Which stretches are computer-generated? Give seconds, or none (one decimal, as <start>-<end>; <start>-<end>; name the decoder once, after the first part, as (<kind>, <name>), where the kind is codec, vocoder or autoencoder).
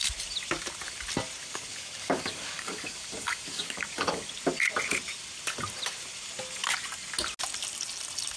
1.4-4.3 (codec, DAC)